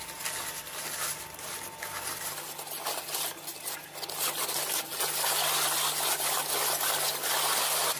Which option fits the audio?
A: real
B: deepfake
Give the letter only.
A